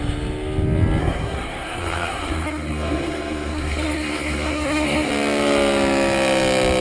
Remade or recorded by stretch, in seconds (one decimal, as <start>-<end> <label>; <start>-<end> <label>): 0.0-1.0 recorded; 1.0-5.1 remade; 5.1-6.8 recorded